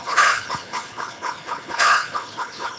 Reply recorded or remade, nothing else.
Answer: remade